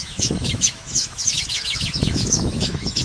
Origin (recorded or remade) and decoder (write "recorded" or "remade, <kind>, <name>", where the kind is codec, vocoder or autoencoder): remade, autoencoder, DAC-VAE